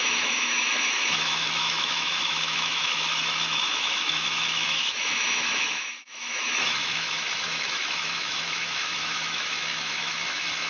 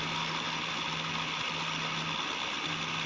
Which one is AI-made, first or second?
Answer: first